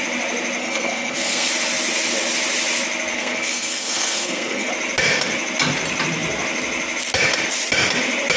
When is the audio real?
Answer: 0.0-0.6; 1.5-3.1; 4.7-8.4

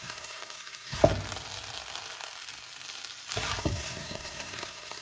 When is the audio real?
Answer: 1.0-3.6

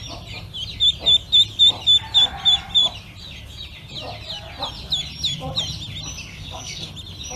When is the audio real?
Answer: 0.0-6.3; 6.9-7.4

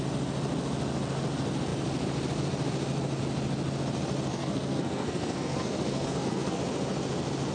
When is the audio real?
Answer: 0.0-4.3; 6.6-7.5

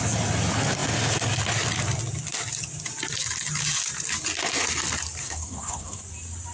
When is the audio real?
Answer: 0.0-5.2; 6.0-6.5

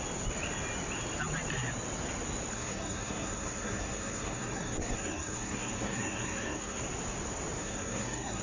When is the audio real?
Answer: 0.0-2.5; 6.8-7.6

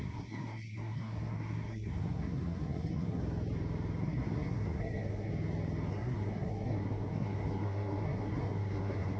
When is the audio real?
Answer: 3.2-4.0; 5.3-5.9